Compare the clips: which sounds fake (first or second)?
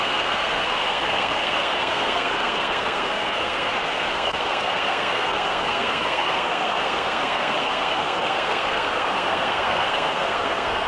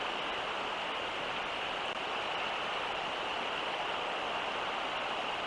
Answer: first